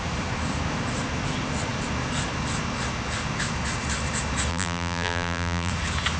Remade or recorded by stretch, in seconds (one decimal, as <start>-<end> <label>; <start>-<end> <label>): 0.0-4.5 recorded; 4.5-5.7 remade; 5.7-6.2 recorded